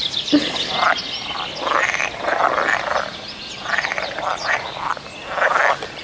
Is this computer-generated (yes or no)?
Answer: no